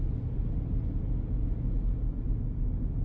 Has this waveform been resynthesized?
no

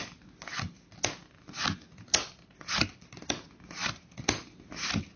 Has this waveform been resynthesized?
no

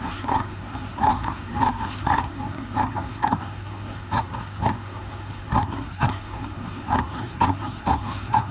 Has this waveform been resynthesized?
yes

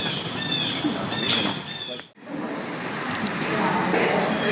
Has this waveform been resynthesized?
no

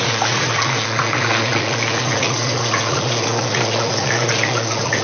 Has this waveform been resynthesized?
yes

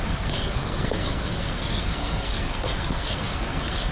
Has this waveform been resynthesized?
yes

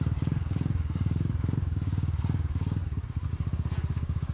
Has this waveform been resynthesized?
yes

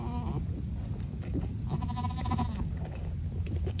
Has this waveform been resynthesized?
no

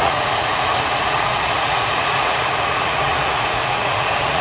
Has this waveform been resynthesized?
yes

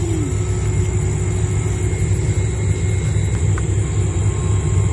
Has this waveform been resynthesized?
no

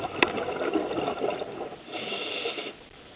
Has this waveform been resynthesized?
no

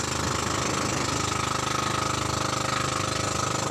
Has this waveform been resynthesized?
no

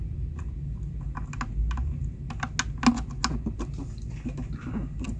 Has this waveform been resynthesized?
no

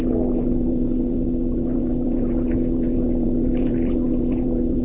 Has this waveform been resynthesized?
no